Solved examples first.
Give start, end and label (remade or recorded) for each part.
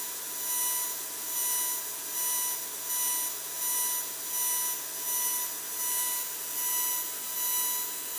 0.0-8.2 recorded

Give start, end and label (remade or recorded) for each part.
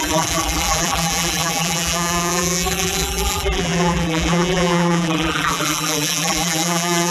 0.0-7.1 remade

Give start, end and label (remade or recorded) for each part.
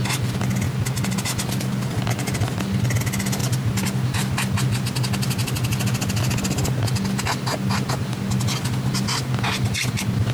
0.0-10.3 recorded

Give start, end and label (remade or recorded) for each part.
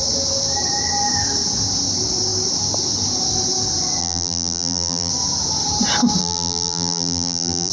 0.0-4.0 recorded; 4.0-5.1 remade; 5.1-6.2 recorded; 6.2-7.7 remade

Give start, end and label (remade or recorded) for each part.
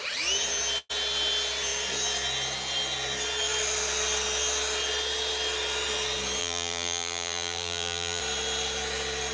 0.0-6.4 recorded; 6.4-8.2 remade; 8.2-9.3 recorded